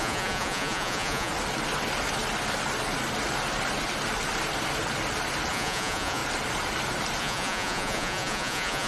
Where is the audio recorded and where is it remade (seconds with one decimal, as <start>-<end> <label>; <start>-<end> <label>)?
0.0-1.3 remade; 1.3-5.5 recorded; 5.5-6.2 remade; 6.2-7.2 recorded; 7.2-8.9 remade